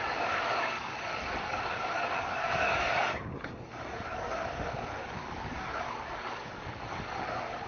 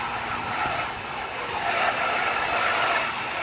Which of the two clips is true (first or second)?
second